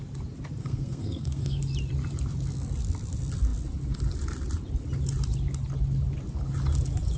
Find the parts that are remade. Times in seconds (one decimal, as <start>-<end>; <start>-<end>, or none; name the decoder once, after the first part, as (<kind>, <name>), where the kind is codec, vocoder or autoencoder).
0.6-1.6 (codec, SNAC)